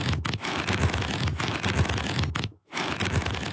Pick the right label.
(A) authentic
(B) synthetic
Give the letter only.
B